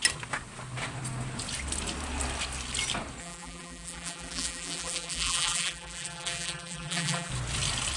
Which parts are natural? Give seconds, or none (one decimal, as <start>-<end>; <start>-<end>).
0.0-3.2; 7.3-8.0